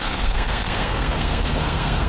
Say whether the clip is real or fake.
fake